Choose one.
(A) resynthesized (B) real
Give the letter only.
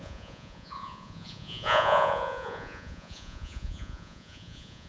A